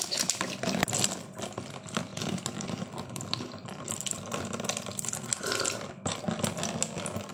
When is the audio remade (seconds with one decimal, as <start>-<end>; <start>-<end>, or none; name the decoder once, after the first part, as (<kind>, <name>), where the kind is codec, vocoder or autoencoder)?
2.1-5.9 (vocoder, BigVGAN v2)